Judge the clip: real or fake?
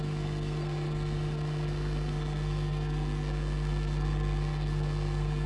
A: fake